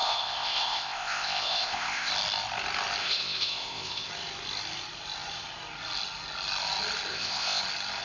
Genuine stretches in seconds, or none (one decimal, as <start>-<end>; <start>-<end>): 2.1-3.0; 4.1-7.1; 7.6-8.0